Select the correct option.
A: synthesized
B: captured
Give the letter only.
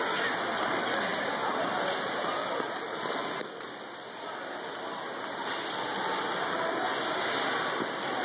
B